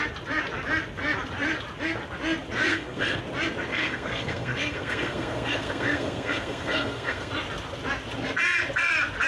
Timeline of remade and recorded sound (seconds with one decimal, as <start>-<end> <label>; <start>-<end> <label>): 0.0-2.7 recorded; 2.7-3.2 remade; 3.2-3.7 recorded; 3.7-7.3 remade; 7.3-9.3 recorded